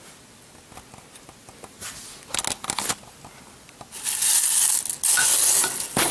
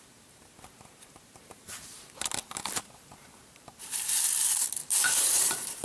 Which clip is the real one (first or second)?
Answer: first